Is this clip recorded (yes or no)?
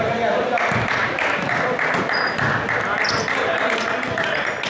yes